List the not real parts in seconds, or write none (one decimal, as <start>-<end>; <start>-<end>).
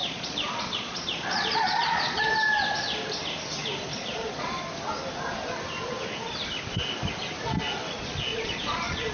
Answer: 0.0-2.3; 3.9-4.6; 8.3-9.1